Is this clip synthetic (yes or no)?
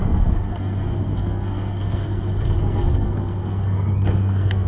yes